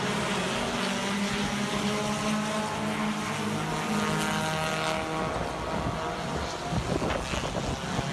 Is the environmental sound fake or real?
real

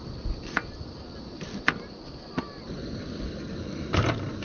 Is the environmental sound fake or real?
real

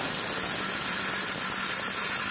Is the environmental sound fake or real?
fake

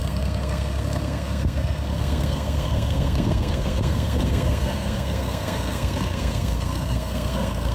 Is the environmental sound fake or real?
fake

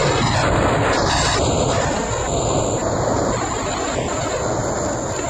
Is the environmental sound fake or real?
real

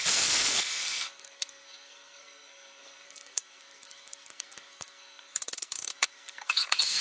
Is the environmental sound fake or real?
fake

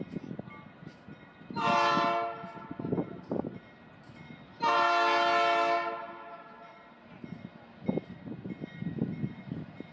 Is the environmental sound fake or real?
real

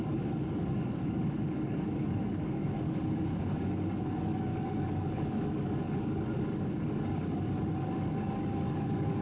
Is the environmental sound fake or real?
fake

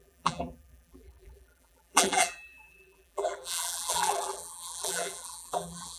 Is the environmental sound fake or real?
fake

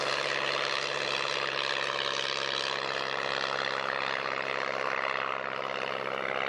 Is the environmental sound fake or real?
real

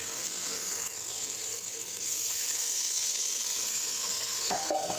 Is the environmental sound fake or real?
fake